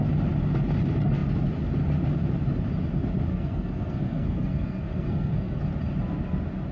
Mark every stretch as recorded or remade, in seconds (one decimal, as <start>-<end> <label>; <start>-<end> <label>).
0.0-3.3 recorded; 3.3-5.6 remade; 5.6-6.7 recorded